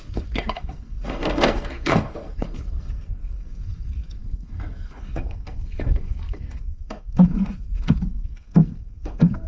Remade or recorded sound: remade